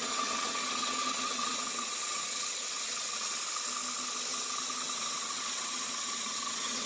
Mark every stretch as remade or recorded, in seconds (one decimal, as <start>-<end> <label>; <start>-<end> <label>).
0.0-3.4 remade; 3.4-4.3 recorded; 4.3-6.9 remade